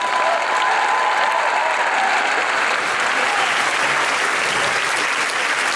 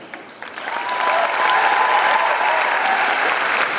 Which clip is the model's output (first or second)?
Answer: second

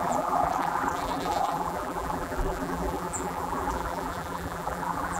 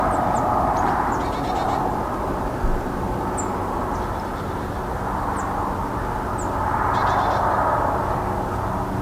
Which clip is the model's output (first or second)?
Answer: first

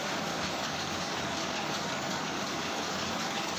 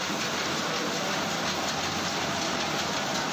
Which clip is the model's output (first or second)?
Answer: first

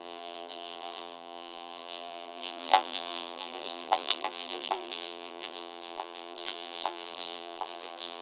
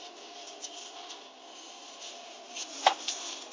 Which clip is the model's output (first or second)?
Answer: first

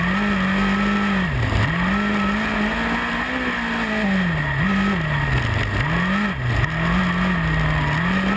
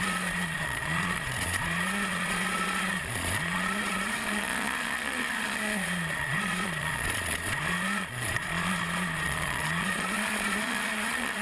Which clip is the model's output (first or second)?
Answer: second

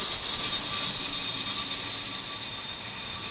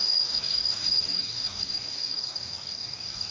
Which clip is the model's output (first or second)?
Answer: second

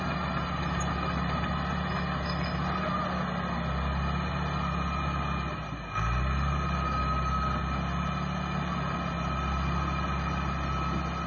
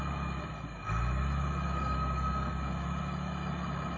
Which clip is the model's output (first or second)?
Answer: second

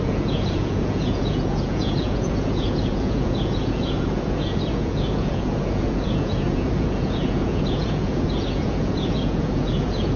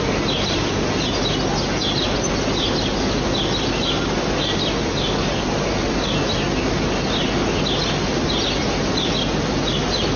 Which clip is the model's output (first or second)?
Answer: first